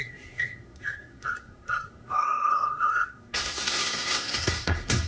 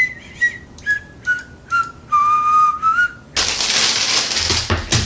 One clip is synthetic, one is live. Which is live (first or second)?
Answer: second